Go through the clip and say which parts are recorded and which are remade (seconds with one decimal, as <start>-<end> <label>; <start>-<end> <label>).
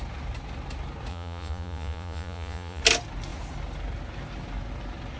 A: 0.0-1.1 recorded; 1.1-2.8 remade; 2.8-5.2 recorded